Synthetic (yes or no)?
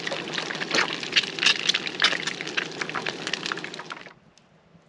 no